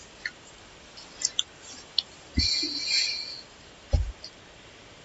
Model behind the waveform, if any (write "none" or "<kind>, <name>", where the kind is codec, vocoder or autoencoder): none